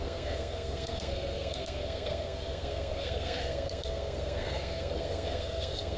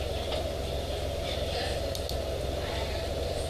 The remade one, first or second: first